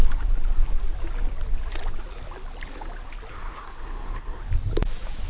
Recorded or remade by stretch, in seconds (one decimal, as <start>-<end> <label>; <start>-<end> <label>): 0.0-3.3 recorded; 3.3-4.4 remade; 4.4-5.3 recorded